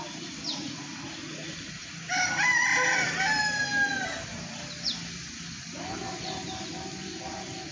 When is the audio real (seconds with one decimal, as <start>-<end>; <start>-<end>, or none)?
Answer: 0.0-0.5; 1.9-7.7